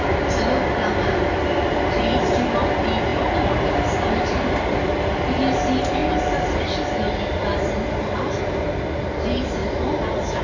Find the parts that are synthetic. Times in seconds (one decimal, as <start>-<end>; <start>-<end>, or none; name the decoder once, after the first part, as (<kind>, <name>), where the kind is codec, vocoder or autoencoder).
none